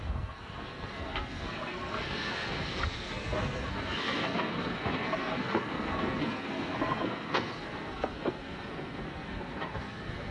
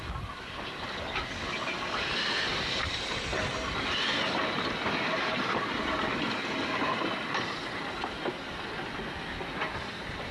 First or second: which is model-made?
first